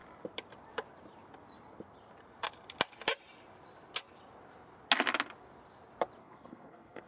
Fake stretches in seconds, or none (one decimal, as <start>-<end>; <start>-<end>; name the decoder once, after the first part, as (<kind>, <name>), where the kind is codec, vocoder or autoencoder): 6.2-7.1 (codec, SNAC)